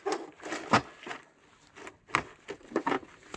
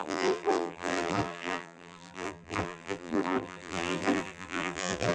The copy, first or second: second